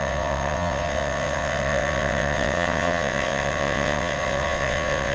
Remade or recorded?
remade